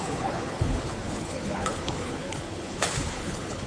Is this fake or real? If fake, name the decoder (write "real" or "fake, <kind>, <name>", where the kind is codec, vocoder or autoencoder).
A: fake, codec, HILCodec